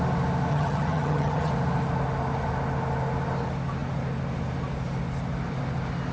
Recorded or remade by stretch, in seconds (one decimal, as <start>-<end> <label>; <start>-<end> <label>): 0.0-0.5 recorded; 0.5-1.5 remade; 1.5-6.1 recorded